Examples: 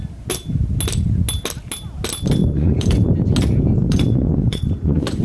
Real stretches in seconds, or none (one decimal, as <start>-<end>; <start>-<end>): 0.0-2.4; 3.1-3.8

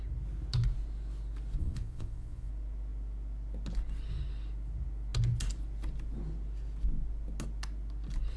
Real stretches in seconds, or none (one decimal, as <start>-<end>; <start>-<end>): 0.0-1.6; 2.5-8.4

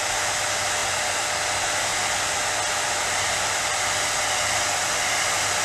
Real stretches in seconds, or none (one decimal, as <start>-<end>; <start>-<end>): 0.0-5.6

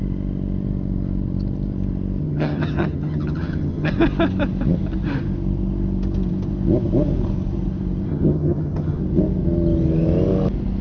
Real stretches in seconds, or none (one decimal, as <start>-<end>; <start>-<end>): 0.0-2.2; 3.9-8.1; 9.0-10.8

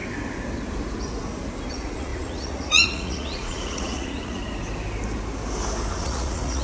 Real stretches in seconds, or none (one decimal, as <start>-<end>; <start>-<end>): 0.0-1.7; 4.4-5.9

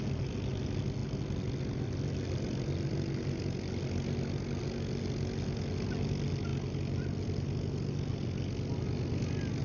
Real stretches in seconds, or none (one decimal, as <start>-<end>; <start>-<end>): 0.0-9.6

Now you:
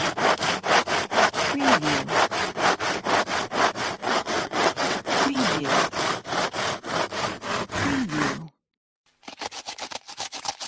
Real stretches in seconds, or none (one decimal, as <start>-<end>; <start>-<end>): 0.0-4.0; 5.6-10.7